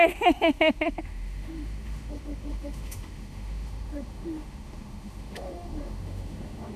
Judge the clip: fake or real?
fake